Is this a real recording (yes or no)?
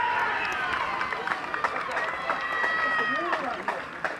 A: yes